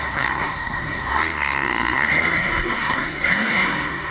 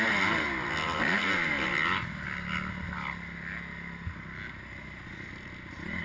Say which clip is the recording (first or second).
second